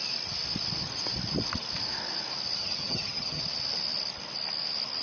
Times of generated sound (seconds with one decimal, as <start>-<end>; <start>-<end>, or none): 2.6-3.4